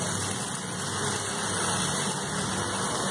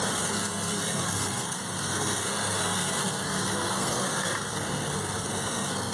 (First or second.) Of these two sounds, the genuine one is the first